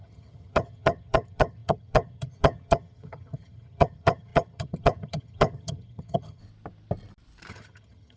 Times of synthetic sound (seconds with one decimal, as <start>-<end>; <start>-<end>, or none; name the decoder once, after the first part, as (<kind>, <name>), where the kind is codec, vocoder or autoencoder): 0.0-6.4 (vocoder, HiFi-GAN); 7.5-8.2

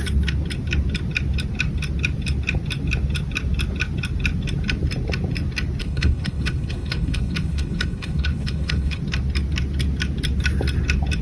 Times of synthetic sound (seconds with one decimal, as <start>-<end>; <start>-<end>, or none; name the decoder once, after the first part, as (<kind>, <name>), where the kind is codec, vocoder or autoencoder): 5.8-9.0 (codec, HILCodec)